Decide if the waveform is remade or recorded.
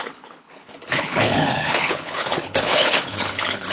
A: remade